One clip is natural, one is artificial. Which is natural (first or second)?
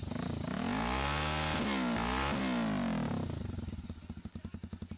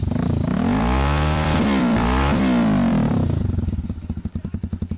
first